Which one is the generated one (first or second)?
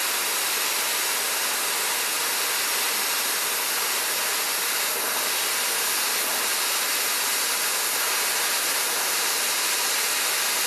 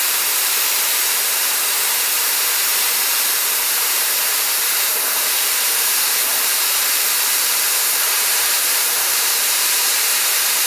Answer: second